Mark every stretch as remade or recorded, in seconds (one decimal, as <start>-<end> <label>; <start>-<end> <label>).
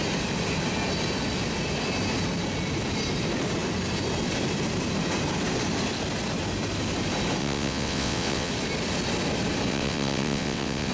0.0-7.4 recorded; 7.4-8.5 remade; 8.5-9.7 recorded; 9.7-10.9 remade